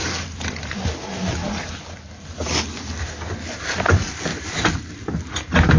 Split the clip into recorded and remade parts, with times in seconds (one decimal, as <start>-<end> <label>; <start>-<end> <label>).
0.0-5.8 recorded